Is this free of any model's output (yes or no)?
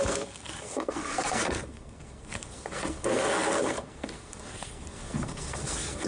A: no